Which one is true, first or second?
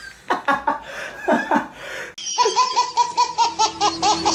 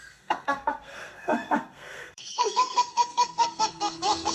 first